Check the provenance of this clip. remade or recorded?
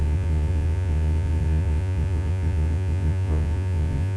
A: remade